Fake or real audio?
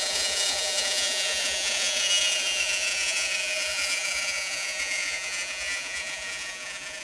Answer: fake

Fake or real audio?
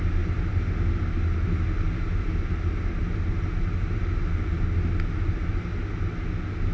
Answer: real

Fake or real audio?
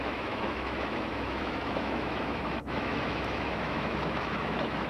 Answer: fake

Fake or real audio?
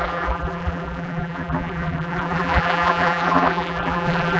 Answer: fake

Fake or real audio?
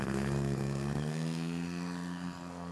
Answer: fake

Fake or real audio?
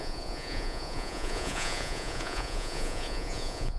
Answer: fake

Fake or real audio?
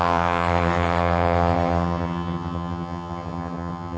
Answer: fake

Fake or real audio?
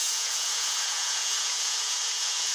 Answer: fake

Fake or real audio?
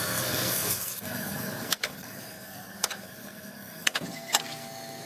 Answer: fake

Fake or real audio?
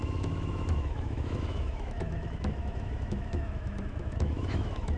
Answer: fake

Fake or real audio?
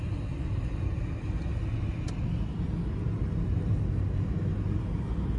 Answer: real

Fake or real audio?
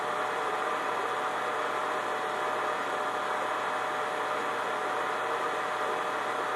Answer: real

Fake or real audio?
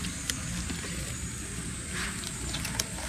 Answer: real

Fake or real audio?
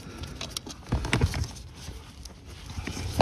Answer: real